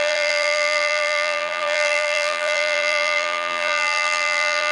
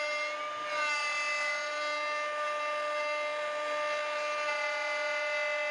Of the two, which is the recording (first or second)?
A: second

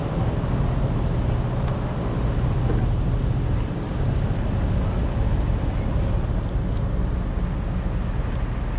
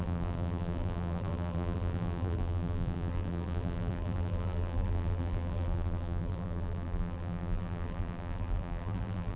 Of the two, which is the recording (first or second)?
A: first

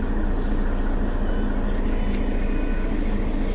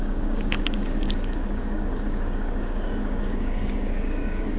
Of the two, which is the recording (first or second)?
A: first